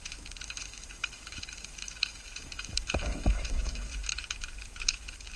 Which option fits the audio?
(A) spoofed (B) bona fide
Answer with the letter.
A